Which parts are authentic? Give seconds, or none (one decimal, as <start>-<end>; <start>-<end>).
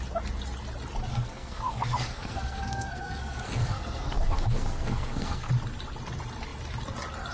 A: 0.0-1.1; 5.5-7.3